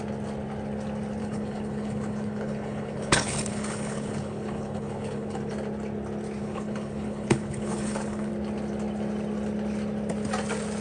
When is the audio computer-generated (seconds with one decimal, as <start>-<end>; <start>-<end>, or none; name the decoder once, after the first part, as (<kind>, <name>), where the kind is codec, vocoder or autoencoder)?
1.2-5.5 (codec, HILCodec); 6.4-8.3